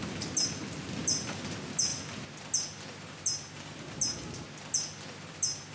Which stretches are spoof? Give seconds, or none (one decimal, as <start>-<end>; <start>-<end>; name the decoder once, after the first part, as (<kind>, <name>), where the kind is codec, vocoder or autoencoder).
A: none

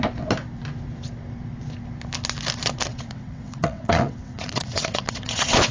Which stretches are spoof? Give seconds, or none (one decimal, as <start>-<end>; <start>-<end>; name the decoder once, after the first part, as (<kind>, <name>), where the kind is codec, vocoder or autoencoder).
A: 2.9-5.7 (vocoder, WaveNeXt)

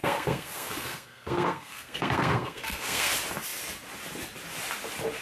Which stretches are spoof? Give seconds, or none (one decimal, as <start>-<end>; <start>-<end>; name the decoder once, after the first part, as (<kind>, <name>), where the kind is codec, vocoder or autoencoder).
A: 0.0-3.1 (codec, SNAC)

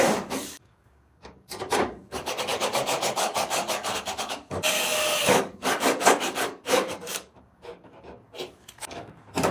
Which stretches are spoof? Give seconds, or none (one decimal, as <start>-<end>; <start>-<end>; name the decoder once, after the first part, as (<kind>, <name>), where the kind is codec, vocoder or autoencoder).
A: 0.0-9.5 (codec, DAC)

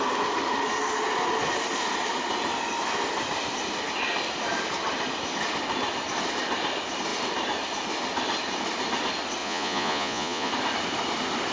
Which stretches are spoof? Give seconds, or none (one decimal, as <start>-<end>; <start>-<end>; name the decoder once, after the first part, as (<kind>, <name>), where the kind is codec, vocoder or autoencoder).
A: 9.4-10.5 (vocoder, Vocos)